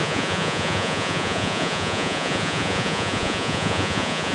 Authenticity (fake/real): fake